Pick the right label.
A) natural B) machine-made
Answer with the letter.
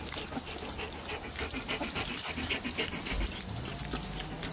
A